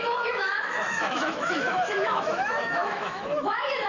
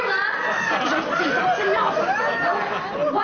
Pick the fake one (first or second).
first